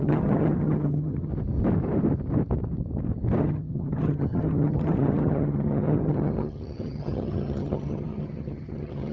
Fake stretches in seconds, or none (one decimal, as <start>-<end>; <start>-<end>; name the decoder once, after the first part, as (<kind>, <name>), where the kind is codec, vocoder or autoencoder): 0.0-1.3 (vocoder, HiFi-GAN); 3.4-9.1